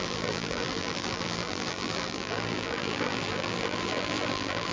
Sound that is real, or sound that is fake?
fake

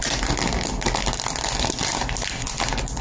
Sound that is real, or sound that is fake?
fake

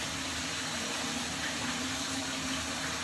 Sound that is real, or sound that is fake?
real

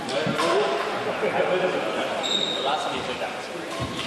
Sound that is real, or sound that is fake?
real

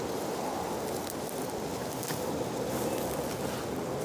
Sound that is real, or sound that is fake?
real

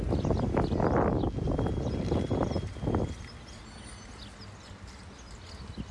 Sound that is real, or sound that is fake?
real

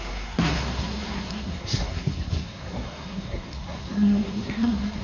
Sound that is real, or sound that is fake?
fake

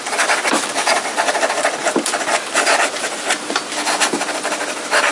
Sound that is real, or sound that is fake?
real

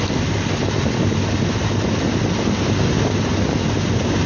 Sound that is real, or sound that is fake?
real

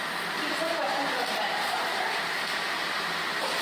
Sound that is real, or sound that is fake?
real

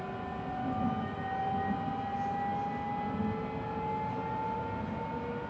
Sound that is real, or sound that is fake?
real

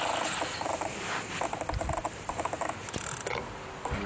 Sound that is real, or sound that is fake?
real